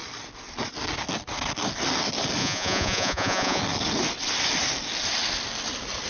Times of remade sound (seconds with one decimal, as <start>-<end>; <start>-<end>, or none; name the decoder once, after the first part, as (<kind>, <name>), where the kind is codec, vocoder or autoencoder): 2.4-3.6 (vocoder, Vocos)